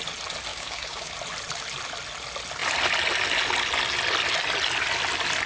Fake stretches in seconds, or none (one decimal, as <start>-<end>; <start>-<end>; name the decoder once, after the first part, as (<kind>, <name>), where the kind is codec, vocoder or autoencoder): 0.5-1.1 (codec, DAC)